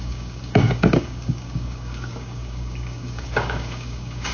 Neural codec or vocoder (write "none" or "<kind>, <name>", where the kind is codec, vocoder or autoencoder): codec, DAC